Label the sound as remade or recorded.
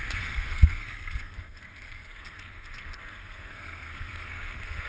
remade